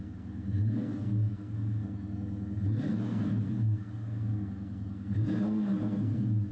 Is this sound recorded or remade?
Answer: remade